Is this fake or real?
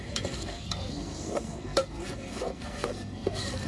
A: fake